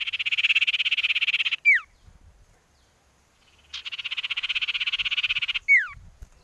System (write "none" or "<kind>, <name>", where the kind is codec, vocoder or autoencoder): none